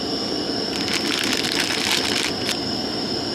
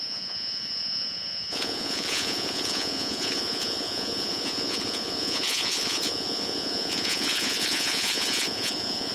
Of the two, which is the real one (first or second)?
first